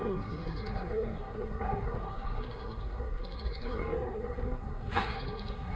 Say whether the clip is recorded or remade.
remade